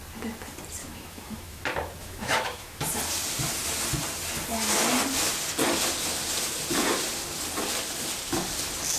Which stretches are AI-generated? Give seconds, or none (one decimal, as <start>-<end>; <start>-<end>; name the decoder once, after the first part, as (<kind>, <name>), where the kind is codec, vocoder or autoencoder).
0.8-1.6 (autoencoder, DAC-VAE); 2.0-2.8